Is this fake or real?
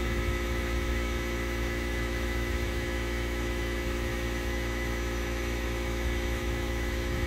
fake